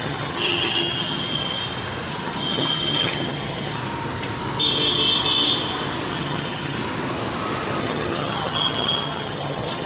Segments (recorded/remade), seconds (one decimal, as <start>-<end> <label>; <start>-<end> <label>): 0.0-1.6 remade; 1.6-2.1 recorded; 2.1-3.8 remade; 3.8-6.1 recorded; 6.1-6.8 remade; 6.8-7.8 recorded; 7.8-9.9 remade